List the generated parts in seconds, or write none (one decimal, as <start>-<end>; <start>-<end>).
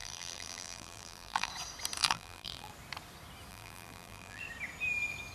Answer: 0.0-1.5; 2.0-2.7; 3.5-4.4